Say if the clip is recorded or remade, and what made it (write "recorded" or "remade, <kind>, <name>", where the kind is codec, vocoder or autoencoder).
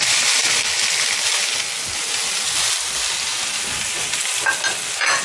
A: recorded